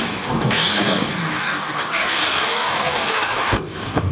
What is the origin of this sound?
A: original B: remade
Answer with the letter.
B